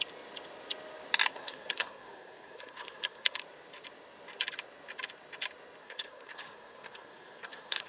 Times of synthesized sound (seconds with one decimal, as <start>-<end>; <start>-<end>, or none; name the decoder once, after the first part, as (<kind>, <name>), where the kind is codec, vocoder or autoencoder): 1.3-3.4 (codec, SNAC); 5.8-7.9